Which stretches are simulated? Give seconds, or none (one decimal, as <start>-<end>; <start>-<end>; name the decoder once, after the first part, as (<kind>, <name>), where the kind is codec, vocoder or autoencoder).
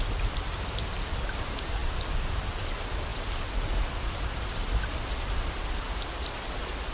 none